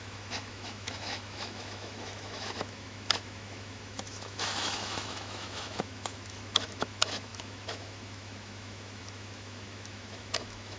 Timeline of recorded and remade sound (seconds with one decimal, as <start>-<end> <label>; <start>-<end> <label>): 0.0-10.8 remade